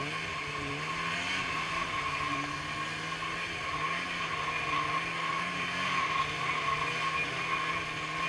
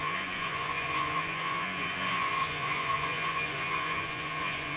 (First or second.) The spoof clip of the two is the second